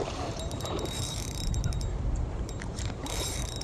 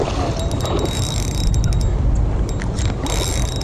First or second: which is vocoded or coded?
first